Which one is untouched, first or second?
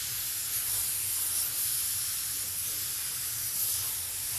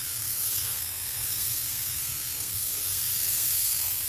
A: first